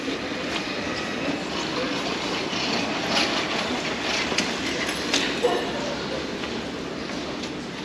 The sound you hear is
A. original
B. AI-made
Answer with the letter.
A